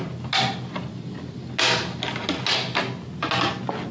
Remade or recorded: recorded